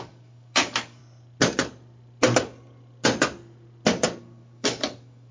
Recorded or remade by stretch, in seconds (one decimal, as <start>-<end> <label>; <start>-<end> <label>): 0.0-1.0 remade; 1.0-4.2 recorded; 4.2-5.3 remade